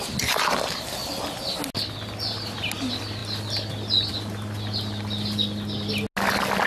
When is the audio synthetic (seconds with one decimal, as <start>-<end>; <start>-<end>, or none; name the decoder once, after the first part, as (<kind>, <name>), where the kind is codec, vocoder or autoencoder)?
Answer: none